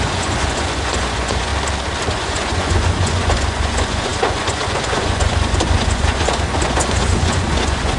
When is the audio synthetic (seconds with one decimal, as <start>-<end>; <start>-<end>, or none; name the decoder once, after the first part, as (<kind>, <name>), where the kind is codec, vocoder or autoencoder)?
0.0-1.5 (vocoder, Vocos); 2.1-8.0